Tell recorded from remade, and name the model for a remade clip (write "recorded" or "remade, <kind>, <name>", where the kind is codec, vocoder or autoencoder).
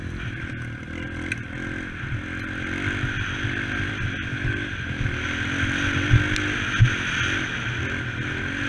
recorded